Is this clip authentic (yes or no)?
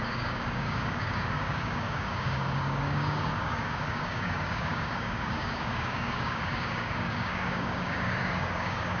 no